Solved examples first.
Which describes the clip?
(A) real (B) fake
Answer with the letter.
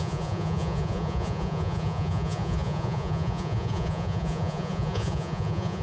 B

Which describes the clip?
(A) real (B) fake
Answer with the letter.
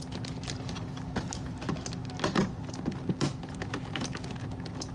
A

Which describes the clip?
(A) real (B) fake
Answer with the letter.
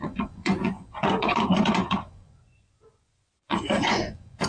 B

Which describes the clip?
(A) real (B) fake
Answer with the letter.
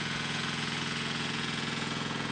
B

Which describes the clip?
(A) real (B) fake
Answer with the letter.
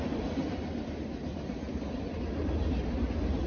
A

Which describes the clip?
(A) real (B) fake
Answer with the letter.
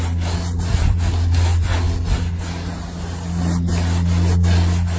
A